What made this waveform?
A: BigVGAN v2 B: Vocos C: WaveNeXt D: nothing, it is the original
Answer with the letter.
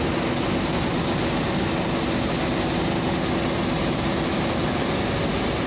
D